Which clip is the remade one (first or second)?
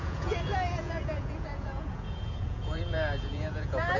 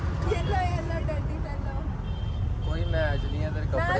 first